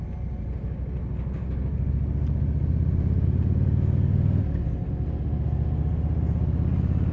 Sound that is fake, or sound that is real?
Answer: real